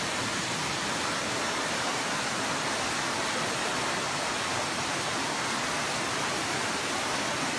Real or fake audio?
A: real